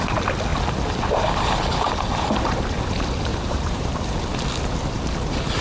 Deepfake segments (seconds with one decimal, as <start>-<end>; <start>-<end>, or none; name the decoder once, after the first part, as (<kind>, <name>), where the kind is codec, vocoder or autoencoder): 3.3-4.2 (vocoder, BigVGAN v2)